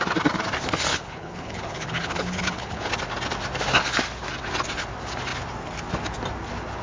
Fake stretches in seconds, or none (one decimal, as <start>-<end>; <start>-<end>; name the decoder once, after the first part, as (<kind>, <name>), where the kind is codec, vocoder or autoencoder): 0.9-2.9 (codec, HILCodec)